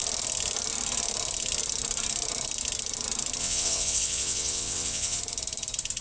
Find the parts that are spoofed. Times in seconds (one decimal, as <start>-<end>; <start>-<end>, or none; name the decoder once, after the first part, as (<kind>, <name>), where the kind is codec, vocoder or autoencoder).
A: 3.4-5.2 (vocoder, WaveNeXt)